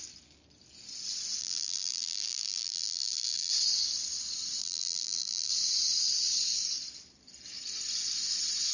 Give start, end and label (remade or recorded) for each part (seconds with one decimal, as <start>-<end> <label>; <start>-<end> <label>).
0.0-1.4 recorded; 1.4-3.5 remade; 3.5-4.6 recorded; 4.6-5.5 remade; 5.5-8.7 recorded